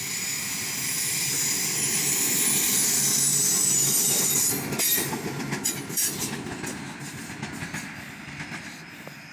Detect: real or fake real